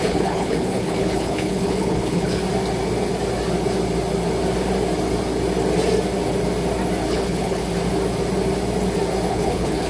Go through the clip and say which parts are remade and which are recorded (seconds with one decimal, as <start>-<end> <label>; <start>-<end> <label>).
0.0-2.4 remade; 2.4-7.1 recorded; 7.1-7.6 remade; 7.6-9.3 recorded; 9.3-9.9 remade